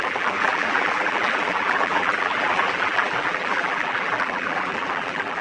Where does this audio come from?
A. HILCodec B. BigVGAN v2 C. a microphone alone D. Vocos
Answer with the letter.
B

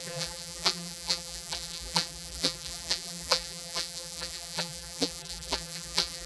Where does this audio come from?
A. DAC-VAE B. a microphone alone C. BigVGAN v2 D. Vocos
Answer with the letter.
C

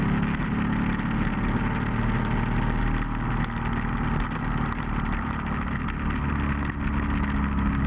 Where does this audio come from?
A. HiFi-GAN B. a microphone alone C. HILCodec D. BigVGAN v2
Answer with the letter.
B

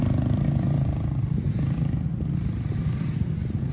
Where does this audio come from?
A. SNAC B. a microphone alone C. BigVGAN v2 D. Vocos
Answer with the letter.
C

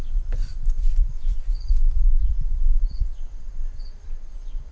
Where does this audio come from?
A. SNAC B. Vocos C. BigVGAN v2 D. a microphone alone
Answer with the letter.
D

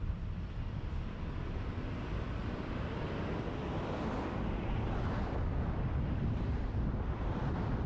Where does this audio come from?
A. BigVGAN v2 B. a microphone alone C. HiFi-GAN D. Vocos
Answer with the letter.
A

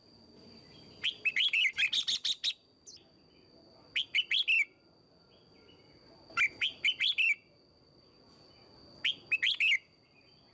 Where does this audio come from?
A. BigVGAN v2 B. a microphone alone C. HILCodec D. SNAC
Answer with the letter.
B